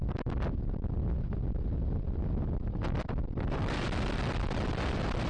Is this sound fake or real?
real